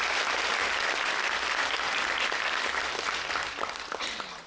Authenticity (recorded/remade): recorded